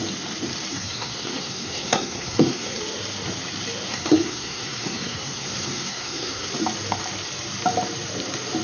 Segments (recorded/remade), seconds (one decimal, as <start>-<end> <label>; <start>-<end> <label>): 0.0-0.7 recorded; 0.7-2.8 remade; 2.8-3.9 recorded; 3.9-6.5 remade; 6.5-8.6 recorded